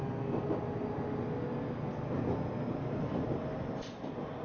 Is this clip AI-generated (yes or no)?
no